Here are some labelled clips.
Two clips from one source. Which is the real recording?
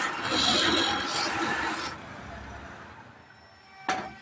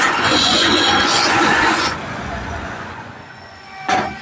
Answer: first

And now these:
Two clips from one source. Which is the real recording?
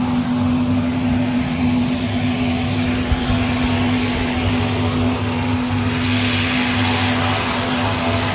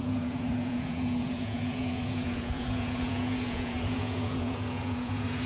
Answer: first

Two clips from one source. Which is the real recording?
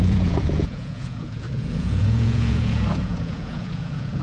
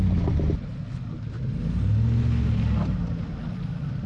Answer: second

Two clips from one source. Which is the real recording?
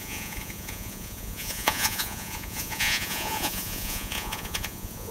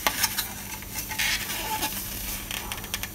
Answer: second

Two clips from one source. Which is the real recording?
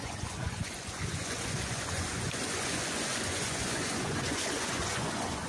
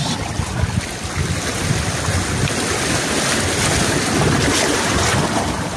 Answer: second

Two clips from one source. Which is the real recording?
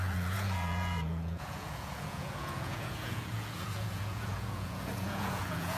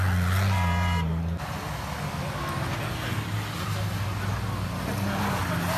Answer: second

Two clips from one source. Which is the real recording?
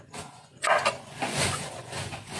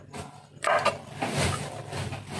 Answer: second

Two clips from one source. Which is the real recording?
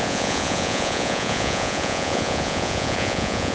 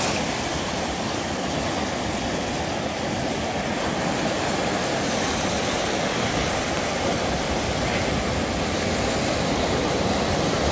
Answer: second